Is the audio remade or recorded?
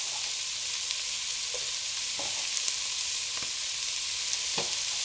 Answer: recorded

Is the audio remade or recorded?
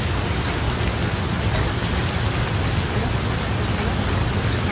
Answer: recorded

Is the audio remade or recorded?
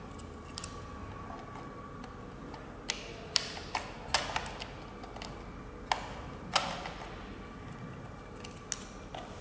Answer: recorded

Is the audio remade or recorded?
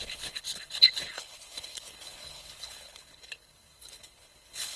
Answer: remade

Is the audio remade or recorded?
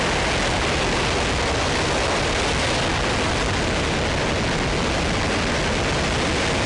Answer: recorded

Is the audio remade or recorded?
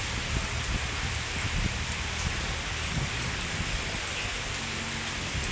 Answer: recorded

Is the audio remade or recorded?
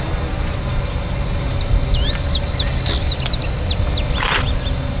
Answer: recorded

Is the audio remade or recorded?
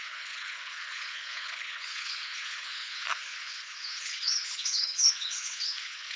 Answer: remade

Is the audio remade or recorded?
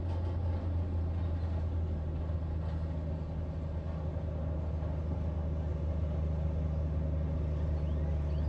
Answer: recorded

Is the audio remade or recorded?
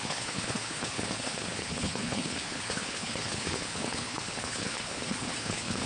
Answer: remade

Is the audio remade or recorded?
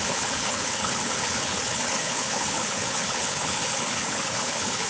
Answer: remade